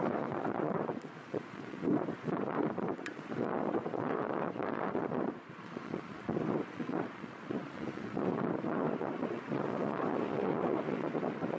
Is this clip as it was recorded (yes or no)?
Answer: no